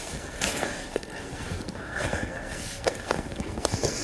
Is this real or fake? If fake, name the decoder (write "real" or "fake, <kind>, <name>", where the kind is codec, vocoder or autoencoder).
fake, codec, SNAC